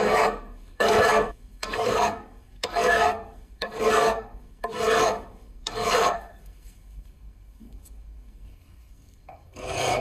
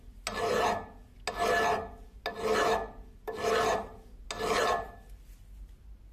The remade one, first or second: first